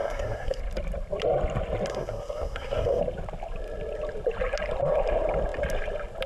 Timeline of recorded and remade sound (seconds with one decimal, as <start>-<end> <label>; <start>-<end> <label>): 0.0-0.6 remade; 0.6-1.9 recorded; 1.9-3.0 remade; 3.0-6.3 recorded